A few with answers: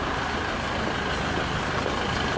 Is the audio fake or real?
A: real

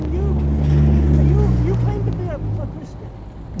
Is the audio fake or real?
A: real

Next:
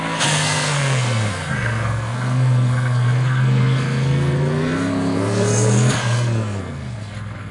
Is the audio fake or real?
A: fake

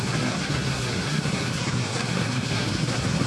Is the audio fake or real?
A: fake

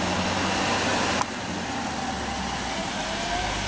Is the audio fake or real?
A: real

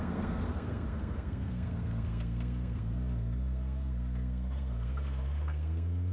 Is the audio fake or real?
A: fake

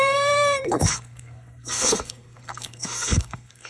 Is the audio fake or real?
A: fake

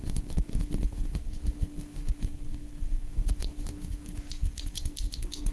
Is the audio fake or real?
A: fake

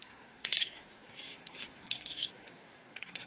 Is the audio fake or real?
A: fake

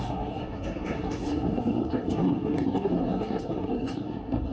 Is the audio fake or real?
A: fake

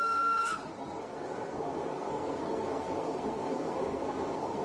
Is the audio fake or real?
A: fake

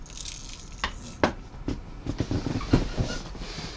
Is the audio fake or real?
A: real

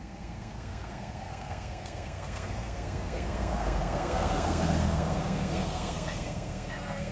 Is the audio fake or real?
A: fake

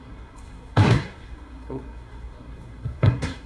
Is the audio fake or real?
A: fake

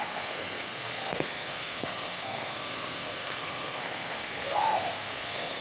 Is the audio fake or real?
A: fake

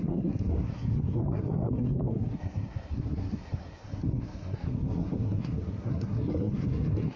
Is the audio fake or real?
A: fake